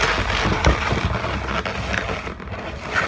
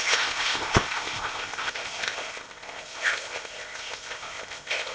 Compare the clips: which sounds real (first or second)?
first